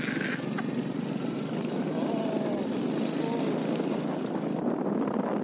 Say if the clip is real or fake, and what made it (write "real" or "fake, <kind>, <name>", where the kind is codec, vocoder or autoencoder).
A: real